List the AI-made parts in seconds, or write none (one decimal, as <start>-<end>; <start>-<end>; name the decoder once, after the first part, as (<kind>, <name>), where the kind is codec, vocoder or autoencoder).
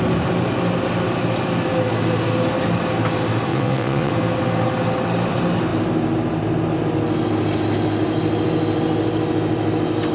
3.5-4.1 (vocoder, WaveNeXt)